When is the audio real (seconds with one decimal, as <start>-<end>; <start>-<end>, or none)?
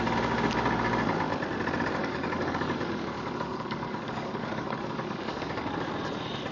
0.0-2.0; 5.9-6.5